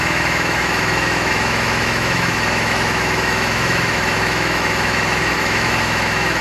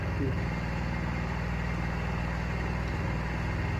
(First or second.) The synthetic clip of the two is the first